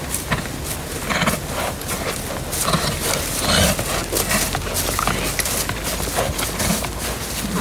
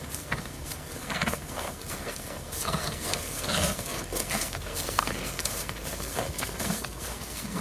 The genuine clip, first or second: first